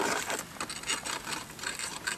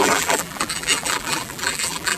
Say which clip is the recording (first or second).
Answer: first